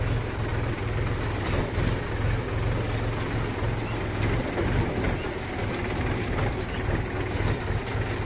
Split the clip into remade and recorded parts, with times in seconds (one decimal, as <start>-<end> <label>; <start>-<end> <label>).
0.0-0.5 recorded; 0.5-1.6 remade; 1.6-8.3 recorded